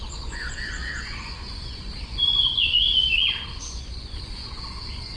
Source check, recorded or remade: remade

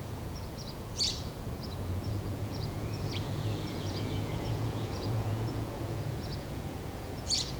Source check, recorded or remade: remade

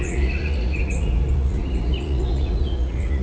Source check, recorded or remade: remade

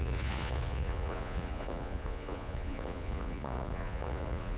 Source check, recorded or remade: remade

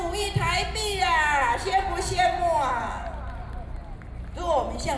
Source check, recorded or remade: recorded